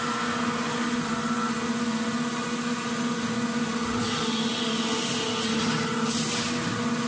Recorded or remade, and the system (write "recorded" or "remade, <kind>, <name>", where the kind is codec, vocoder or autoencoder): recorded